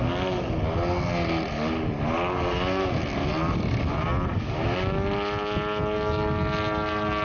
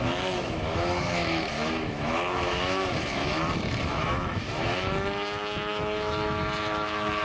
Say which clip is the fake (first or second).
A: second